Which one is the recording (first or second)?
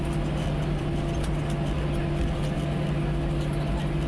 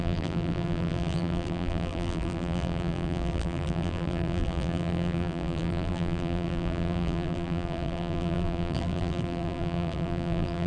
first